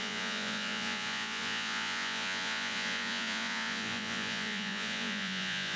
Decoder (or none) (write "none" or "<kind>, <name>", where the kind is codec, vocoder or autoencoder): vocoder, Vocos